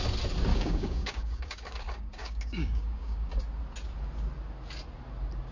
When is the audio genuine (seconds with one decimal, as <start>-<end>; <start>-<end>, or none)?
0.0-0.5; 3.3-5.5